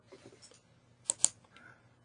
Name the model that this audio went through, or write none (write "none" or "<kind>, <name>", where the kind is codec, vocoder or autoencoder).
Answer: none